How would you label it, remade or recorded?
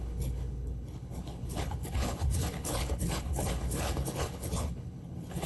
remade